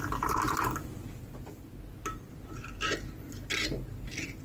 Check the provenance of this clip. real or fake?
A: real